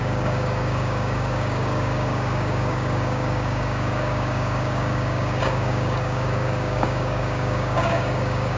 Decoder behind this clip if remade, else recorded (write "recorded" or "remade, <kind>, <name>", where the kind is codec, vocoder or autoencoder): remade, codec, DAC